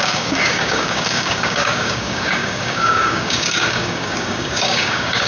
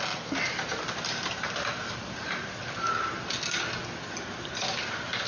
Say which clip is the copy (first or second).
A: first